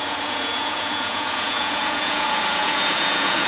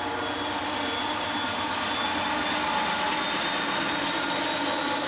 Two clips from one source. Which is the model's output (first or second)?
first